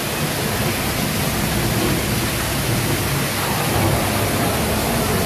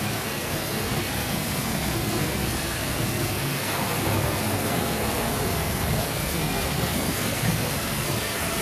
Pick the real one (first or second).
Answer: first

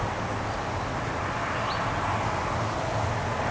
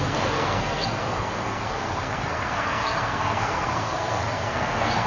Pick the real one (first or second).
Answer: first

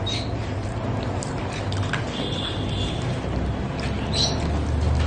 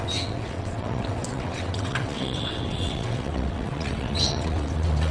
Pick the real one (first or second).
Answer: first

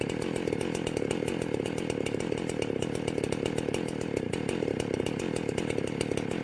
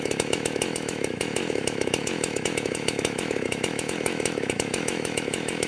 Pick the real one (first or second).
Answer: first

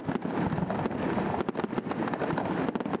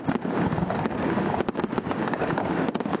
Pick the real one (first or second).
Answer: first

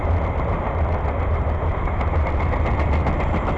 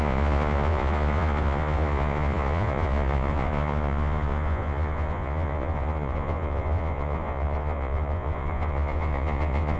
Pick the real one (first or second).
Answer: first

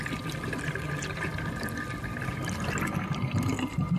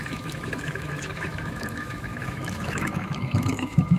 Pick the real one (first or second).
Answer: first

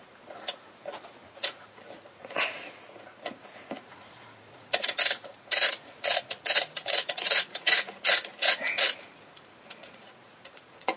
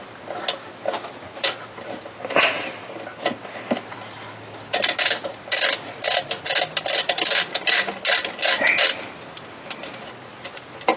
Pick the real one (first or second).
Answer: second